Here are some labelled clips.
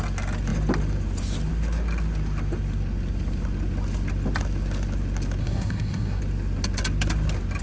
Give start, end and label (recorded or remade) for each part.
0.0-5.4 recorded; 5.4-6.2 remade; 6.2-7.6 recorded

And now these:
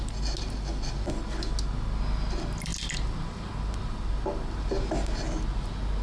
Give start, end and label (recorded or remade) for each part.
0.0-6.0 recorded

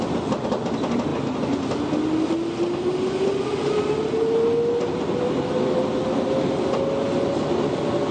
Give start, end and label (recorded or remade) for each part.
0.0-8.1 recorded

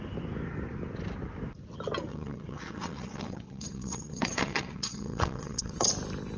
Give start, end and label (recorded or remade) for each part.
0.0-2.1 recorded; 2.1-5.9 remade; 5.9-6.4 recorded

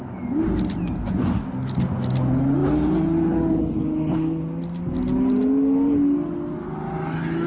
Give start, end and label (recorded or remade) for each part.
0.0-7.5 recorded